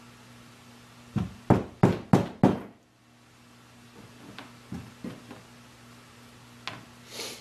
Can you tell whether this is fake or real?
real